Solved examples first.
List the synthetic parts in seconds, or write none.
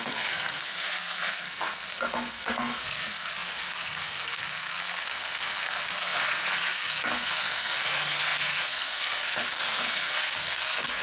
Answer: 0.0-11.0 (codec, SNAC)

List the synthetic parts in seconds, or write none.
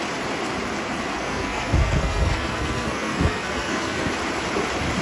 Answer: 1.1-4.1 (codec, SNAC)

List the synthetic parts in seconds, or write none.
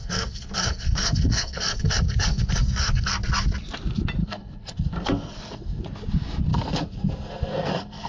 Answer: 0.0-3.1 (codec, SNAC); 4.2-5.8; 6.5-8.1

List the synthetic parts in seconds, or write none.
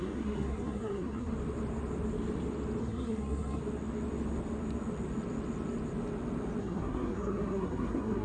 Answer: 0.0-1.3 (codec, SNAC); 2.8-3.6; 6.6-8.2